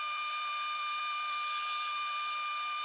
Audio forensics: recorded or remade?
remade